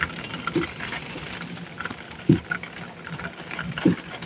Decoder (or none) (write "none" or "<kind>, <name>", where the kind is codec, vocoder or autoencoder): none